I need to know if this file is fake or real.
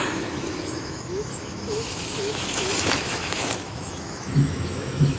fake